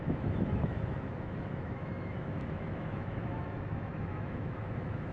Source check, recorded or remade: remade